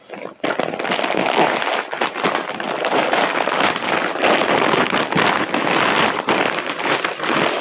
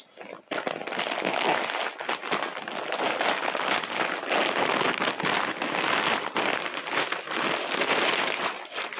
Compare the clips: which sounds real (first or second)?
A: second